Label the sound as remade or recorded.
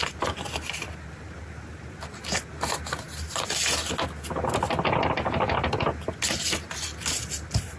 recorded